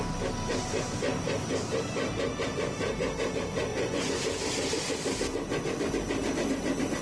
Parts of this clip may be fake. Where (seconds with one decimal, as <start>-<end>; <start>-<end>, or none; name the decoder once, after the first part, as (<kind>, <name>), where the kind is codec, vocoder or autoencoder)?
3.7-4.2 (vocoder, Vocos)